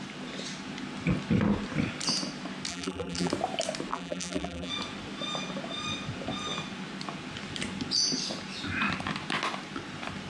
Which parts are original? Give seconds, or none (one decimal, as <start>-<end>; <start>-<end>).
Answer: 0.0-2.7; 3.3-3.9; 4.7-10.3